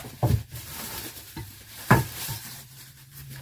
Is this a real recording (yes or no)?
no